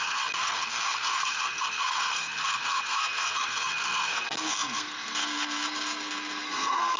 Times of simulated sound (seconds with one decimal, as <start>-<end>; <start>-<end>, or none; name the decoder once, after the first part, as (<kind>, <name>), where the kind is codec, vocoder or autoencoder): 0.0-7.0 (codec, SNAC)